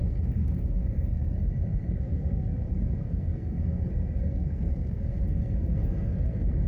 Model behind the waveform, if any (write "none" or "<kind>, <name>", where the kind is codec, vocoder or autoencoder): codec, SNAC